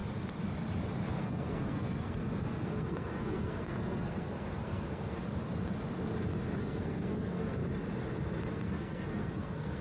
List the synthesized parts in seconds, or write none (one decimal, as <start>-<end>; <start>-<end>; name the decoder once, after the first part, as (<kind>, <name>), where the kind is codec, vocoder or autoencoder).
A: 1.1-5.2 (codec, SNAC); 6.6-7.6; 8.5-9.8